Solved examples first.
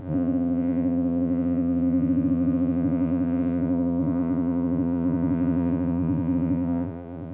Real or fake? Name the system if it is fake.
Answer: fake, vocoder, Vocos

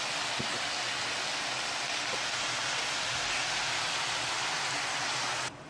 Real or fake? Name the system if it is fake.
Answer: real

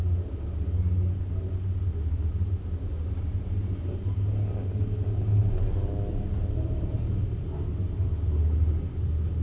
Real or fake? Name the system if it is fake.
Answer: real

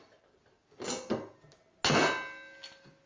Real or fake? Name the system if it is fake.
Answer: real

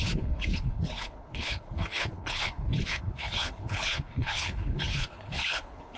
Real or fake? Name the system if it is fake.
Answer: fake, codec, HILCodec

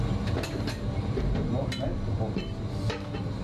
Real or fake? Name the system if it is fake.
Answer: real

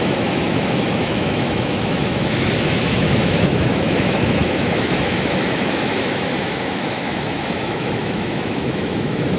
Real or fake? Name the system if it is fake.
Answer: fake, autoencoder, DAC-VAE